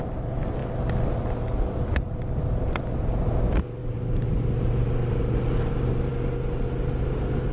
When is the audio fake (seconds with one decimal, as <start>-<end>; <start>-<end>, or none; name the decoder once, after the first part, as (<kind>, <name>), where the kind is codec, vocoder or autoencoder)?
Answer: none